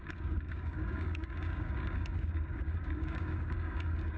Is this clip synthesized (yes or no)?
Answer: yes